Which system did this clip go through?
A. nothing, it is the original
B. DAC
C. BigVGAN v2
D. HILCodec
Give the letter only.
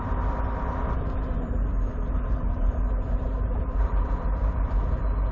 C